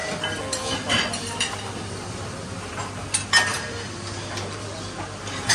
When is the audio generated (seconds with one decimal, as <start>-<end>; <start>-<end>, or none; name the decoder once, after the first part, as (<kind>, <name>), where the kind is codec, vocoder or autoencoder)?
3.5-4.0 (vocoder, BigVGAN v2)